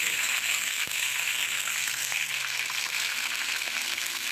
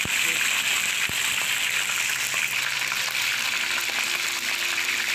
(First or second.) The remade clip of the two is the first